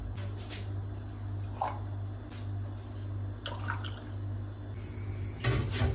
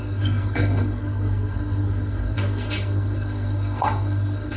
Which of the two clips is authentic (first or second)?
first